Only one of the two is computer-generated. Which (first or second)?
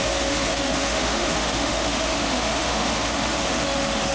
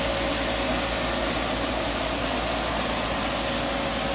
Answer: first